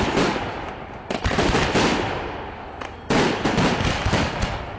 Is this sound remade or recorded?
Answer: recorded